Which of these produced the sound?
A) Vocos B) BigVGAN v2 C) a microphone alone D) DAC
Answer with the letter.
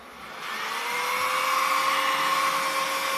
C